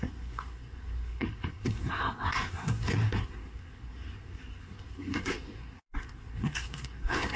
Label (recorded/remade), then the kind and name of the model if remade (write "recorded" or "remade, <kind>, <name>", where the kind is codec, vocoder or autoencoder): remade, codec, SNAC